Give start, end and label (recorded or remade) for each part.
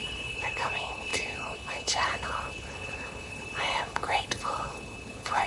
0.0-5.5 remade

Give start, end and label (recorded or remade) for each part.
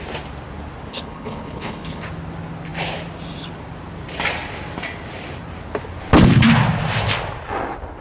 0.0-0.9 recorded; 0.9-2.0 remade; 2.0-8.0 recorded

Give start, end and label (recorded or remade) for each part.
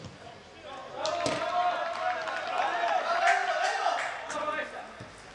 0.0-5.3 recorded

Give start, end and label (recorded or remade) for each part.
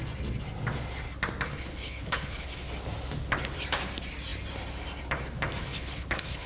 0.0-1.5 recorded; 1.5-2.7 remade; 2.7-5.6 recorded; 5.6-6.5 remade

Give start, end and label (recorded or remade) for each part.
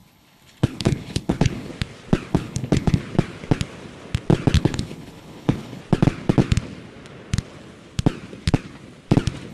0.0-1.7 remade; 1.7-2.3 recorded; 2.3-3.0 remade; 3.0-4.6 recorded; 4.6-5.8 remade; 5.8-9.5 recorded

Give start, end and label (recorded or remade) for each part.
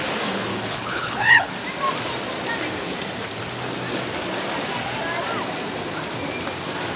0.0-0.5 recorded; 0.5-1.5 remade; 1.5-7.0 recorded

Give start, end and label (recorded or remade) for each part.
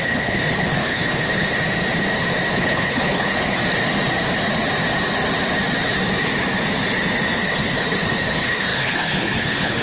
0.0-1.5 remade; 1.5-2.5 recorded; 2.5-3.6 remade; 3.6-7.4 recorded; 7.4-9.8 remade